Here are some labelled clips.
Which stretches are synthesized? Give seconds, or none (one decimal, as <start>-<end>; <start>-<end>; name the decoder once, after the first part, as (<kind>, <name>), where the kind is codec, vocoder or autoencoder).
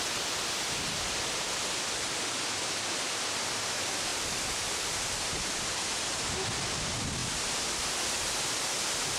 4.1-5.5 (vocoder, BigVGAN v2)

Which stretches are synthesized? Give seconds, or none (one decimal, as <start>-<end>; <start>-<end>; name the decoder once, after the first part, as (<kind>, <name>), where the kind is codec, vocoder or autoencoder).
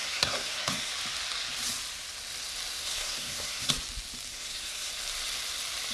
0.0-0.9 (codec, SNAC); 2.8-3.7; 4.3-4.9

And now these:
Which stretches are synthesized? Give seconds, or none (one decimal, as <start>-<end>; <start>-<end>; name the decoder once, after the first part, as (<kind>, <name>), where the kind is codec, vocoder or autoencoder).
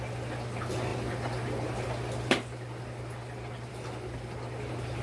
none